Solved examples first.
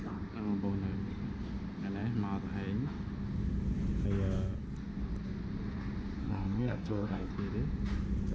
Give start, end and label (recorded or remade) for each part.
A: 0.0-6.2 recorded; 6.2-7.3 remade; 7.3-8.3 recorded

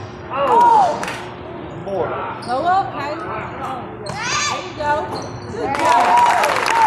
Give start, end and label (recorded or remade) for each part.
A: 0.0-0.7 recorded; 0.7-1.2 remade; 1.2-6.9 recorded

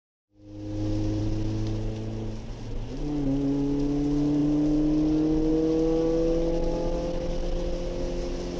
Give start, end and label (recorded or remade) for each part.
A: 0.0-8.6 recorded

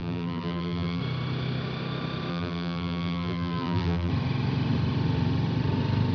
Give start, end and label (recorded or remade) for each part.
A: 0.0-1.0 remade; 1.0-2.3 recorded; 2.3-4.1 remade; 4.1-6.1 recorded

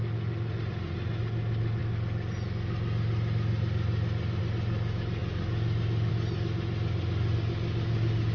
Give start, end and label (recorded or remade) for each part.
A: 0.0-8.3 recorded

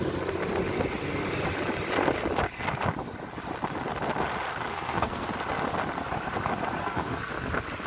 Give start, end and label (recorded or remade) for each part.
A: 0.0-4.7 recorded; 4.7-5.3 remade; 5.3-6.8 recorded; 6.8-7.5 remade; 7.5-7.9 recorded